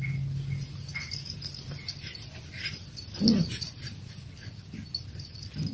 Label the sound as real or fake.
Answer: real